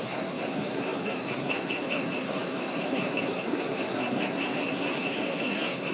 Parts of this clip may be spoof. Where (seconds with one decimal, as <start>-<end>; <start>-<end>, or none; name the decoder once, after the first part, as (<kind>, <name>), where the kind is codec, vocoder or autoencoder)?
0.0-5.9 (codec, SNAC)